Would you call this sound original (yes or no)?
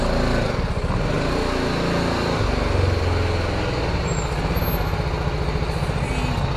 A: yes